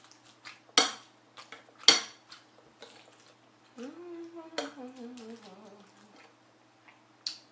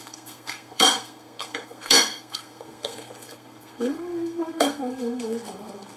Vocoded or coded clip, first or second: second